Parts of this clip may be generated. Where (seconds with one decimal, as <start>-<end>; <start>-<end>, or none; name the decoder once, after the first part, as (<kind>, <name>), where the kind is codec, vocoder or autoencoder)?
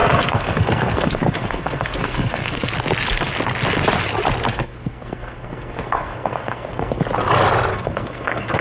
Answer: 0.0-2.7 (codec, SNAC); 4.5-7.0; 7.7-8.6